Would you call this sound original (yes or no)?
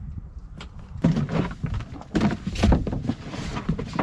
yes